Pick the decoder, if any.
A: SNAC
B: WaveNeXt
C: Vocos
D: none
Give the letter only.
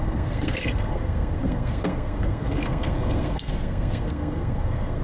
A